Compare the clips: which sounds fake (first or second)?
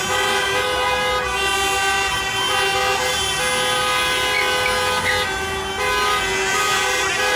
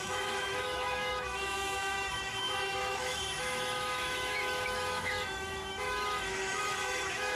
second